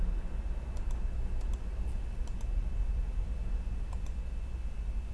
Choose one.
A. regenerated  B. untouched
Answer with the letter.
B